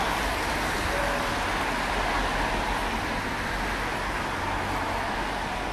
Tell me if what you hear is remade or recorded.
recorded